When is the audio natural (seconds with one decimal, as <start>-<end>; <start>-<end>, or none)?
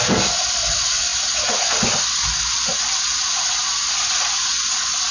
0.0-5.1